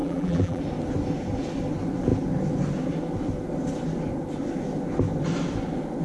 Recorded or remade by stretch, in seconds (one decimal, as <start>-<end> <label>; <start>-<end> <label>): 0.0-0.6 remade; 0.6-6.0 recorded